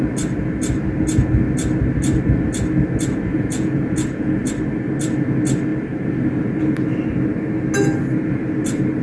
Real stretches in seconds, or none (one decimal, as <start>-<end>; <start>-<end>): 0.0-3.3; 4.5-9.0